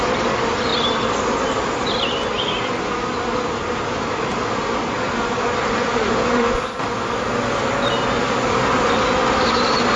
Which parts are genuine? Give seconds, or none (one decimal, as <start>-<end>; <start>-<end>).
0.0-10.0